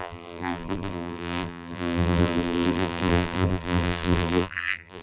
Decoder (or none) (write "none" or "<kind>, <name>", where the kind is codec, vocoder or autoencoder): vocoder, BigVGAN v2